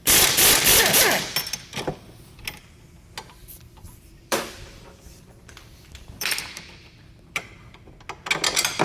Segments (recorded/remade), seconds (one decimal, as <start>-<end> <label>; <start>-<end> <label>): 0.0-3.4 recorded; 3.4-7.5 remade; 7.5-8.8 recorded